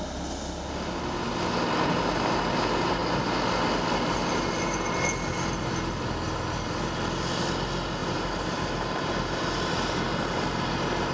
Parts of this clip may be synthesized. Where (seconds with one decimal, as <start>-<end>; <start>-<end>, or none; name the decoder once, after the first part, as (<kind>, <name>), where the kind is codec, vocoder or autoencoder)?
8.0-9.4 (vocoder, BigVGAN v2)